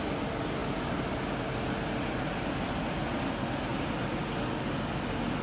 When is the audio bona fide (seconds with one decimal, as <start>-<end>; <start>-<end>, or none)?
0.0-5.4